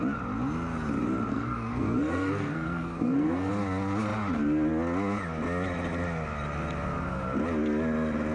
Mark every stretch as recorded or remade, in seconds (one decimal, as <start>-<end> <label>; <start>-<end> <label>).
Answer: 0.0-1.3 recorded; 1.3-3.5 remade; 3.5-8.3 recorded

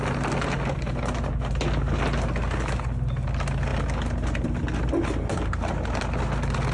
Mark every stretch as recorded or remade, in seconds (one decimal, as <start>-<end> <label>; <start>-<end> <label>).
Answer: 0.0-6.7 recorded

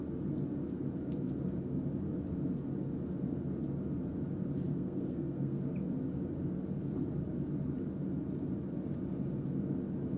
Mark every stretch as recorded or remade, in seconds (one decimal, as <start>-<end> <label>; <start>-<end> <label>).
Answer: 0.0-4.7 recorded; 4.7-5.6 remade; 5.6-10.2 recorded

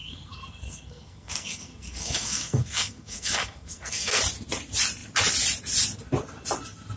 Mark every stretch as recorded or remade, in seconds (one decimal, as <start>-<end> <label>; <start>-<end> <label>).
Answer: 0.0-4.2 remade; 4.2-7.0 recorded

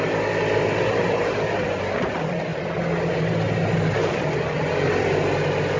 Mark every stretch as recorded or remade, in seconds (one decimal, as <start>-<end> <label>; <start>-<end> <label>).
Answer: 0.0-5.8 recorded

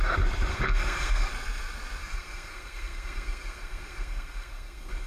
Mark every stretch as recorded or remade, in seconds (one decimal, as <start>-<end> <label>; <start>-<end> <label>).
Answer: 0.0-0.5 recorded; 0.5-1.3 remade; 1.3-2.0 recorded; 2.0-5.1 remade